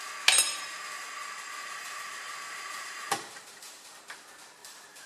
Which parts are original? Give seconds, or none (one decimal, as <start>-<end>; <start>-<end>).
0.0-1.6; 4.0-4.6